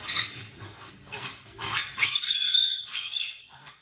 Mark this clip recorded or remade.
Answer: remade